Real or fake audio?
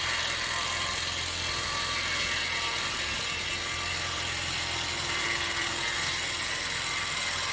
real